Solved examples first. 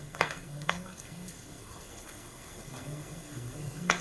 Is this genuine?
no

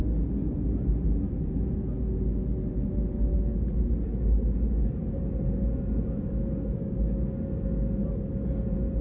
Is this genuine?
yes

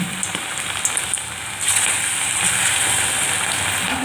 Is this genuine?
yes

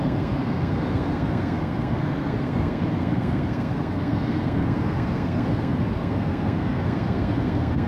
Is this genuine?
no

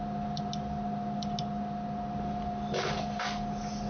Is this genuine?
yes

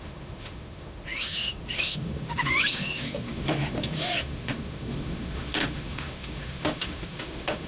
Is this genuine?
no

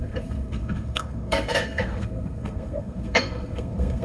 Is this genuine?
no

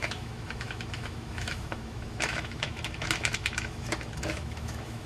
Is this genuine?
no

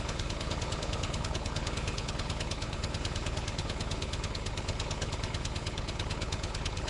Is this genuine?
no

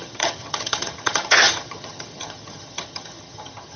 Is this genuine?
no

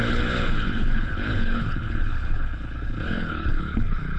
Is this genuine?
no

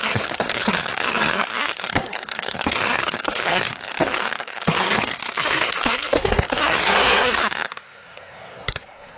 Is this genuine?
no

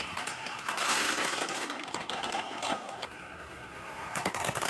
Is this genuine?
no